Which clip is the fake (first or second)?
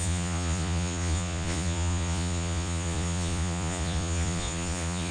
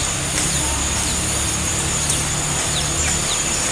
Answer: first